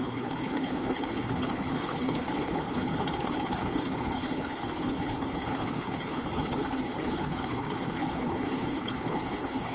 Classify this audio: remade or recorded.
remade